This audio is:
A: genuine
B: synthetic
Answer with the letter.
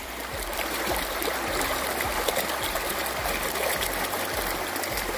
B